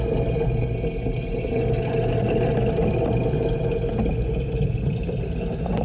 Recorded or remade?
recorded